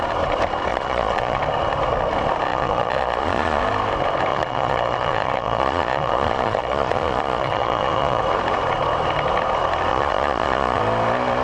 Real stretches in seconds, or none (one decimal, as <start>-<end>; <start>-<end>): 0.0-0.7; 1.4-2.5; 3.6-4.3; 8.2-9.9; 10.8-11.4